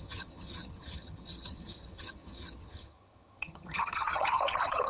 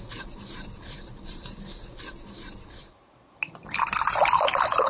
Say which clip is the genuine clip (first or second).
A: second